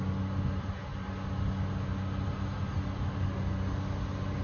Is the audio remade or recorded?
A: recorded